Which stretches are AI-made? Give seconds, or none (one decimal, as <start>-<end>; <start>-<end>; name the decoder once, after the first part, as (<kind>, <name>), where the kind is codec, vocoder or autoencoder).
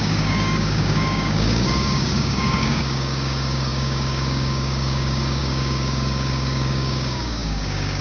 0.0-8.0 (codec, DAC)